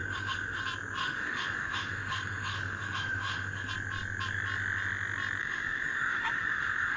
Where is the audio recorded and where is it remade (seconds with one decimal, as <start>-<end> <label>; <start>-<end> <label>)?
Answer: 0.0-0.6 remade; 0.6-1.0 recorded; 1.0-3.7 remade; 3.7-5.4 recorded; 5.4-7.0 remade